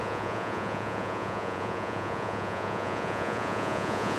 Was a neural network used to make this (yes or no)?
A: yes